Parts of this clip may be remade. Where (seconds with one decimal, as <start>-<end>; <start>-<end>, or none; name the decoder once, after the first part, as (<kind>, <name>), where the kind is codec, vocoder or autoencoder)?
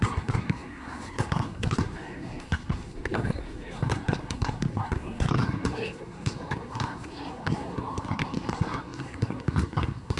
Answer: 0.0-10.2 (codec, SNAC)